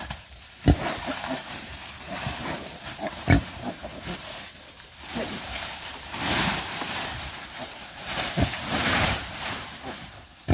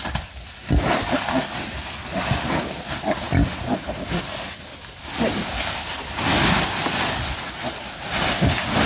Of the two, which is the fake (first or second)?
first